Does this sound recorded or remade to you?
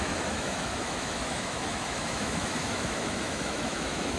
remade